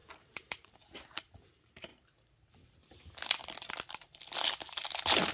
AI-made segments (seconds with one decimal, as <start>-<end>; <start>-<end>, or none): 0.0-1.9